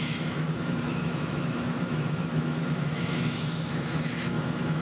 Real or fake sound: fake